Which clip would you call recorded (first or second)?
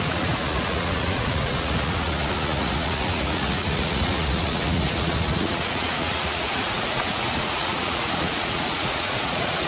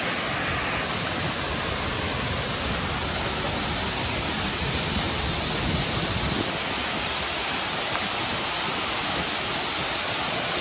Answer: second